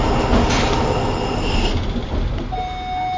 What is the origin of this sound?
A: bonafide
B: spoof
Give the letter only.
A